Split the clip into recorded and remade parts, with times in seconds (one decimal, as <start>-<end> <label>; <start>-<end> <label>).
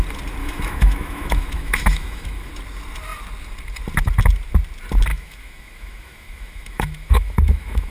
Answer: 0.0-0.4 recorded; 0.4-2.5 remade; 2.5-5.1 recorded; 5.1-7.9 remade